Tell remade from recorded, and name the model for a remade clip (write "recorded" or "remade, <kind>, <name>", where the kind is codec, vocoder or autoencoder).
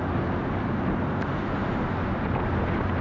recorded